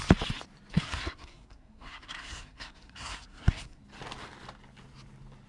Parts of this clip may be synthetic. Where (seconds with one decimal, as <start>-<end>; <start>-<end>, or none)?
0.7-3.8